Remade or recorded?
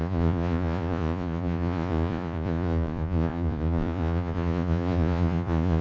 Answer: remade